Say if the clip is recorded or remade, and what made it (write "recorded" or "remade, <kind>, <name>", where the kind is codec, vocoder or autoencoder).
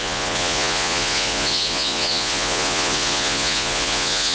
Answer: remade, vocoder, Vocos